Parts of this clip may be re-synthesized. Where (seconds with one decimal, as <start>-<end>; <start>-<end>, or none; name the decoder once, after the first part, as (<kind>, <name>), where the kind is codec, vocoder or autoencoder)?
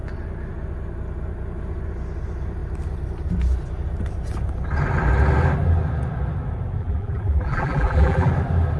6.8-8.3 (vocoder, BigVGAN v2)